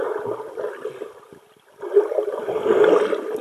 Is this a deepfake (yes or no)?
no